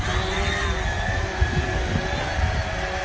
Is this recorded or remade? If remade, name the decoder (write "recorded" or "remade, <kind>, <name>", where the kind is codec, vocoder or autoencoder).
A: recorded